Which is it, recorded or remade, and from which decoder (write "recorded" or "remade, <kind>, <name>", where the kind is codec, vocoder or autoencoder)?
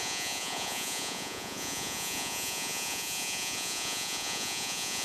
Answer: remade, vocoder, Vocos